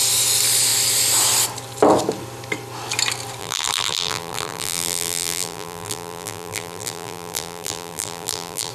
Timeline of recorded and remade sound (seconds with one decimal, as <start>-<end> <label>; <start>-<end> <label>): 0.0-3.4 recorded; 3.4-8.7 remade